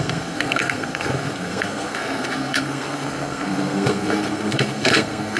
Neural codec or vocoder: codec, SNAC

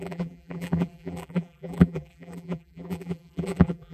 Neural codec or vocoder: vocoder, BigVGAN v2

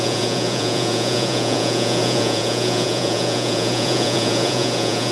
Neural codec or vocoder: vocoder, Vocos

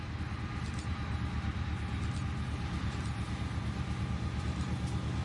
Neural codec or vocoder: none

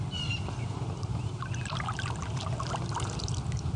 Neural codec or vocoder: none